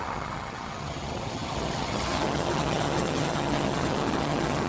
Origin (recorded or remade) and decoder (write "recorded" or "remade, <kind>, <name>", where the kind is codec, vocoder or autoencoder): remade, vocoder, HiFi-GAN